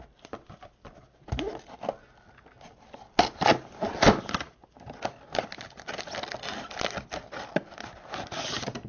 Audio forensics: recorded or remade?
recorded